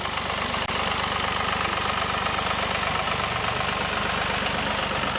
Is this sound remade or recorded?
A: recorded